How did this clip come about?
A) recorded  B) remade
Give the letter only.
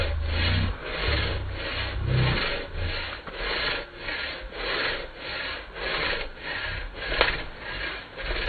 A